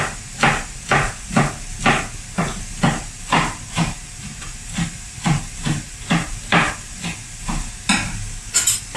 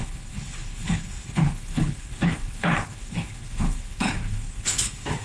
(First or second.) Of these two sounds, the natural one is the first